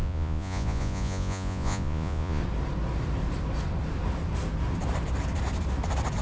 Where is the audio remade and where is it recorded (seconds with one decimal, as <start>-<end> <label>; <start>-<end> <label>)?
0.0-2.4 remade; 2.4-6.2 recorded